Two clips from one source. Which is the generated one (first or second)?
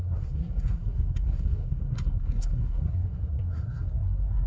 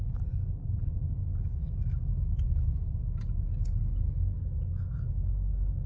first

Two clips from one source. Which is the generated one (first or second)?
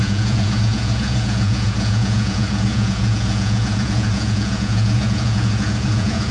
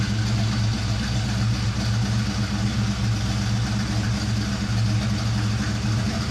first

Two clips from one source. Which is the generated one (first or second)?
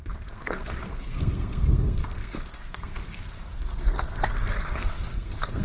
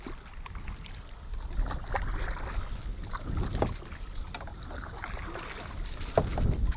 first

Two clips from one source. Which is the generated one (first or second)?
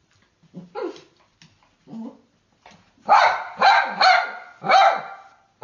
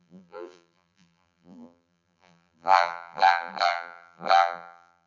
second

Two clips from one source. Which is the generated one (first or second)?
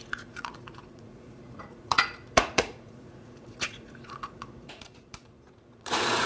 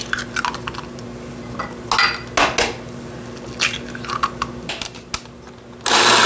first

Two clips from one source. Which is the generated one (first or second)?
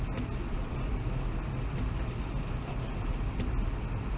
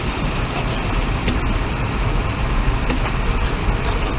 second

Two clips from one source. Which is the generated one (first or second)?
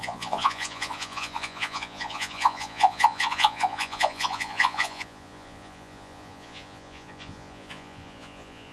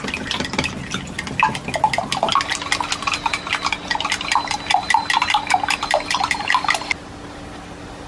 first